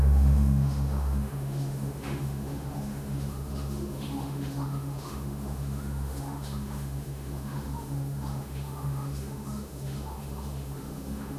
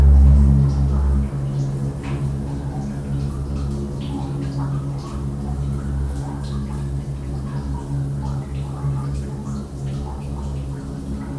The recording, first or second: second